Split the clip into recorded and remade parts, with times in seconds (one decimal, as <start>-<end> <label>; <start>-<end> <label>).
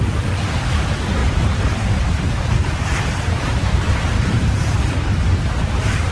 0.0-1.2 recorded; 1.2-4.9 remade; 4.9-6.1 recorded